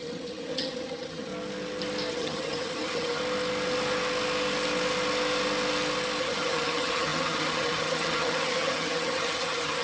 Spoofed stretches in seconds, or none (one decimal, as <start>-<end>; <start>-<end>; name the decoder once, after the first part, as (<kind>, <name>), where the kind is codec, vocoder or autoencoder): 0.0-1.3 (vocoder, HiFi-GAN); 2.1-3.2; 6.2-9.8